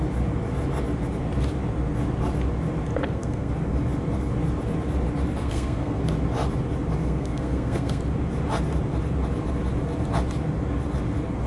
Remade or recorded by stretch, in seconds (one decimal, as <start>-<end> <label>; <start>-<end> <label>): 0.0-3.0 recorded; 3.0-3.5 remade; 3.5-5.4 recorded; 5.4-6.0 remade; 6.0-7.0 recorded; 7.0-8.0 remade; 8.0-11.5 recorded